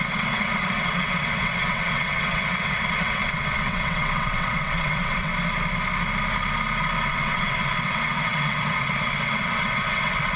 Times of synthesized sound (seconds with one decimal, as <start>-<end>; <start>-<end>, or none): 0.0-5.3; 7.1-10.4